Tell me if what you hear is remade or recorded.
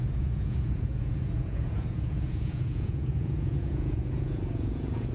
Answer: remade